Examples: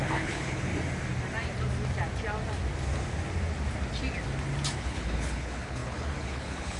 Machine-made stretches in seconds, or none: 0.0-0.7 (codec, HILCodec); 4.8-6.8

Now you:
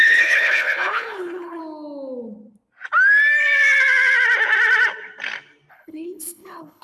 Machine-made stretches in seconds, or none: 0.0-1.6 (codec, HILCodec); 5.7-6.8

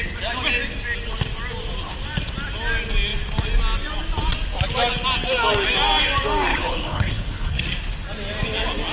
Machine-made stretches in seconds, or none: 6.5-7.6 (codec, HILCodec)

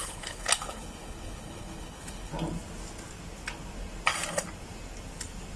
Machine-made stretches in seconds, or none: 0.0-2.3 (codec, HILCodec)